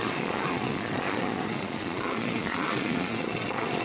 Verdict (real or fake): fake